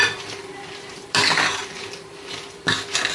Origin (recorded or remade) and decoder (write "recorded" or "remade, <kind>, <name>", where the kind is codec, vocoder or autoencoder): recorded